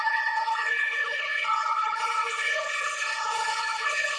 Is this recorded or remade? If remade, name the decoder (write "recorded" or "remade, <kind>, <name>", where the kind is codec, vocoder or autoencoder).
remade, codec, HILCodec